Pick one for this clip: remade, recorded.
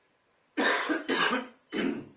recorded